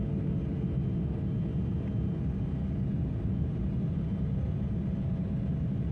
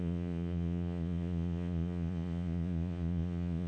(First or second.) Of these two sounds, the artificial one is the second